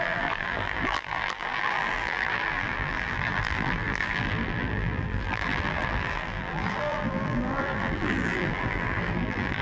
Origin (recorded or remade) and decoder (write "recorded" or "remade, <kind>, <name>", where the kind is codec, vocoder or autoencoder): remade, vocoder, BigVGAN v2